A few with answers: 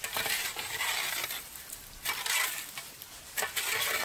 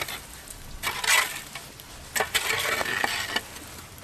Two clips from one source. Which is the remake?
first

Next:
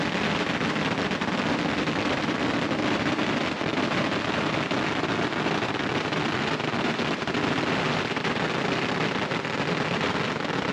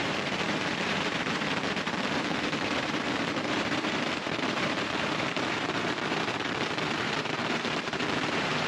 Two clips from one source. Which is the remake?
second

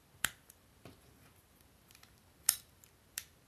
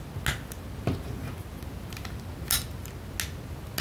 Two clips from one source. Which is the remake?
first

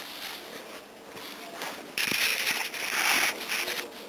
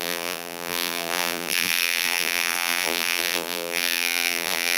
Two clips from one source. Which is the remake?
second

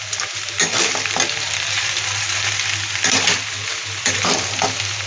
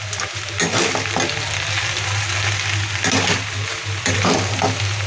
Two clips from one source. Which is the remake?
first